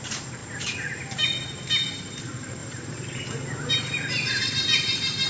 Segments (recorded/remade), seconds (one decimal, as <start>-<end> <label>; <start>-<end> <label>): 0.0-2.6 recorded; 2.6-3.7 remade; 3.7-5.3 recorded